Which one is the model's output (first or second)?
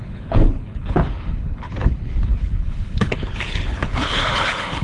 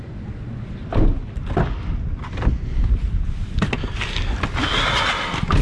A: first